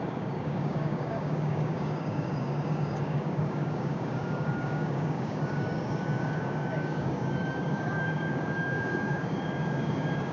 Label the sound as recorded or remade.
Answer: remade